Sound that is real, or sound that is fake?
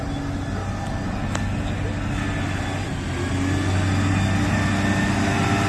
real